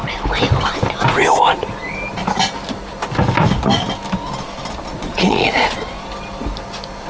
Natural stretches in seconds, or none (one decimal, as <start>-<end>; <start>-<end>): 0.0-4.9; 5.9-7.1